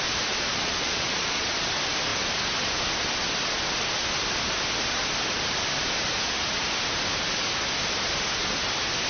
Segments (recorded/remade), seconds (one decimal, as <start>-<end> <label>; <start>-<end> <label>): 0.0-0.5 recorded; 0.5-1.7 remade; 1.7-9.1 recorded